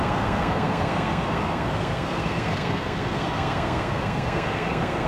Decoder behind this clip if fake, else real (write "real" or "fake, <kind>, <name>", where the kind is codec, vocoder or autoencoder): fake, codec, SNAC